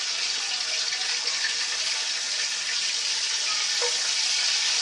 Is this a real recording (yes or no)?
yes